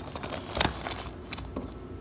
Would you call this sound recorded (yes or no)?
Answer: yes